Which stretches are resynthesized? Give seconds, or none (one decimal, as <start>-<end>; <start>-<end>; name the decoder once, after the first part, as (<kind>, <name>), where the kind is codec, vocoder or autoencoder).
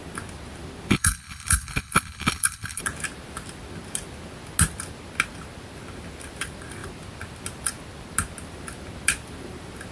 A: 0.9-2.8 (codec, HILCodec)